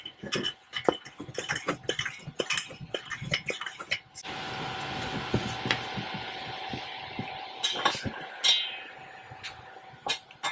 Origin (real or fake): real